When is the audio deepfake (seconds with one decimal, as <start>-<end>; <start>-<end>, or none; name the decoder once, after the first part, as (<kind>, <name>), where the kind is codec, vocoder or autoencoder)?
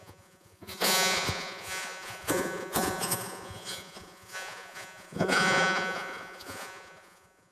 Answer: 0.0-7.5 (vocoder, Vocos)